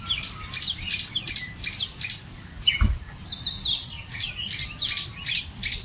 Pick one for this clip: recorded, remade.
recorded